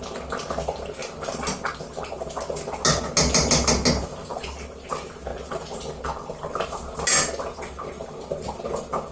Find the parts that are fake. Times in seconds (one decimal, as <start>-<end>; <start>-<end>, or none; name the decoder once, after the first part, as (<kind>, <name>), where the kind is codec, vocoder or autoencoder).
none